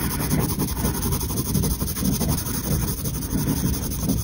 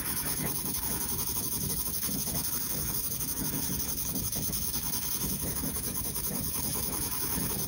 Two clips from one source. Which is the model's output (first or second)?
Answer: second